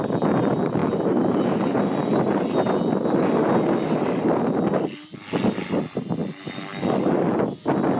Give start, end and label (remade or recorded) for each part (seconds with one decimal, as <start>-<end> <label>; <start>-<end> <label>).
0.0-8.0 recorded